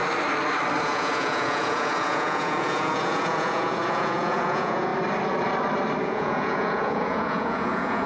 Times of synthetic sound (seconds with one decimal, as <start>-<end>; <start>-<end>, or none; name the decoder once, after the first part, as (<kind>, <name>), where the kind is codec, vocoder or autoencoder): 0.8-4.9 (vocoder, Vocos); 6.0-8.1